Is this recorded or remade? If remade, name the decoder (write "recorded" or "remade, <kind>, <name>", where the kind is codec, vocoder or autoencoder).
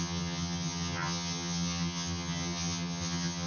remade, vocoder, HiFi-GAN